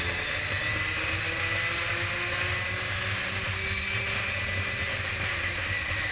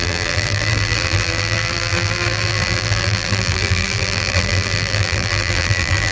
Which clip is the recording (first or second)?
first